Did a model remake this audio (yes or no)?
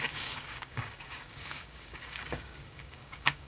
yes